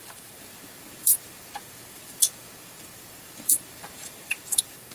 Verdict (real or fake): fake